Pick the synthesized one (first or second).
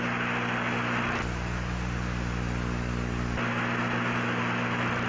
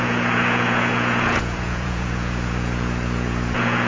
second